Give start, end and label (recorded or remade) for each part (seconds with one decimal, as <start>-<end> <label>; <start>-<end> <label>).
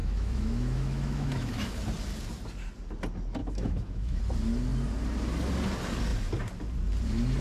0.0-1.7 remade; 1.7-3.4 recorded; 3.4-4.2 remade; 4.2-7.4 recorded